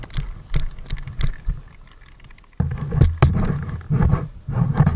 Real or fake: real